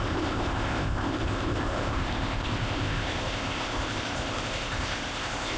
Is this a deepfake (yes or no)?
yes